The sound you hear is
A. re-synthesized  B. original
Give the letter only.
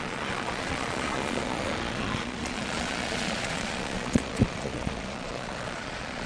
A